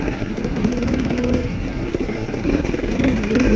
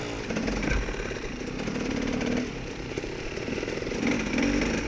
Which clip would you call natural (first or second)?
second